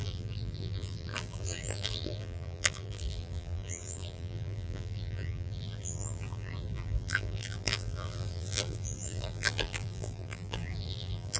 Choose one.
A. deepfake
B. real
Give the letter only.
A